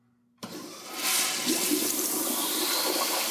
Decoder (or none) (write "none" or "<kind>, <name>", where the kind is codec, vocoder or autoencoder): none